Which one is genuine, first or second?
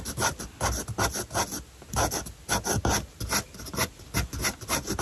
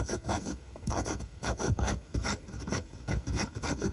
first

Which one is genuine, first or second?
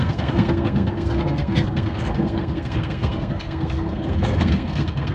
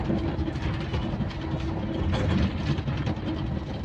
second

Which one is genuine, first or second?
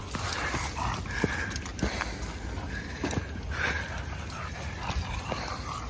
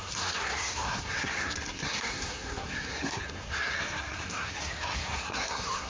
first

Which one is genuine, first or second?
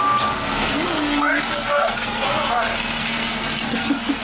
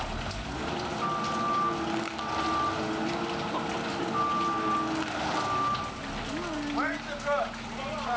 second